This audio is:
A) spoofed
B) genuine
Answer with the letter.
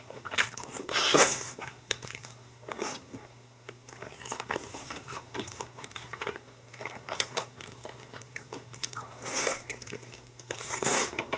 A